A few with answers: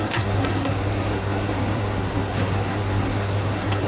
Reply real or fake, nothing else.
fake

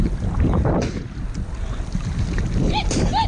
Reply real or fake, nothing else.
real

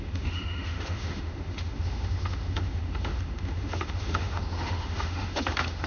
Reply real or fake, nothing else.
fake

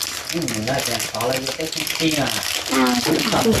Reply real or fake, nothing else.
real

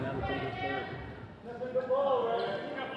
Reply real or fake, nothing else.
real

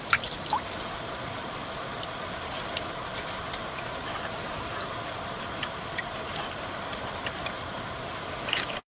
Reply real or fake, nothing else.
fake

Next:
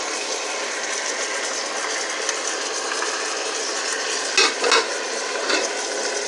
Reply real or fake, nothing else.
real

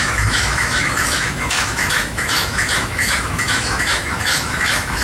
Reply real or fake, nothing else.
fake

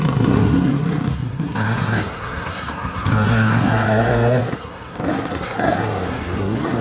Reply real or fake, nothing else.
fake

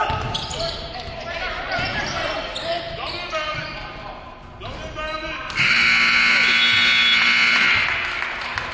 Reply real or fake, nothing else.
real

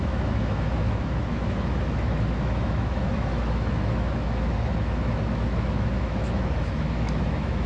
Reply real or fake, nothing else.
fake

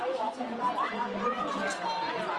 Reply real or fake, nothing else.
real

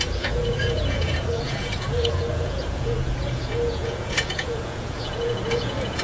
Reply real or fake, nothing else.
fake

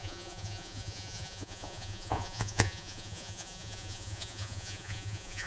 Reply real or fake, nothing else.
fake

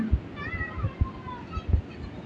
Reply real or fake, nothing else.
real